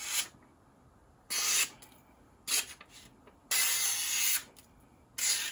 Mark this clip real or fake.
real